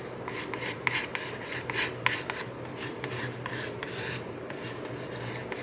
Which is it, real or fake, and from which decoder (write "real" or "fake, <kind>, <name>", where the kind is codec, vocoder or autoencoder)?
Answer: real